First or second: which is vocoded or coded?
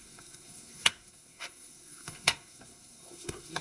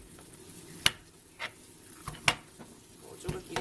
first